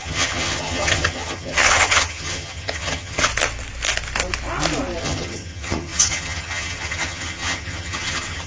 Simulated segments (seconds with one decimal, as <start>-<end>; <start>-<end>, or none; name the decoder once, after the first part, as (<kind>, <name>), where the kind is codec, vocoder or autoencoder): 0.0-3.3 (vocoder, HiFi-GAN); 5.0-8.5

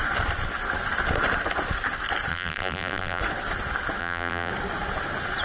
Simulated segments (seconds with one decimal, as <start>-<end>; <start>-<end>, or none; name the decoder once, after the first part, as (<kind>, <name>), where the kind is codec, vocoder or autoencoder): 2.3-3.2 (vocoder, BigVGAN v2); 4.0-4.5

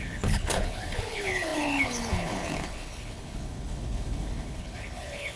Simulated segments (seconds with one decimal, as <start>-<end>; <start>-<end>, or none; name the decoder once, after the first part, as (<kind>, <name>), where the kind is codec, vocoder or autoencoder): 0.0-5.4 (codec, HILCodec)